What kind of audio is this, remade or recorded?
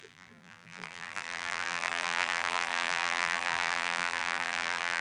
remade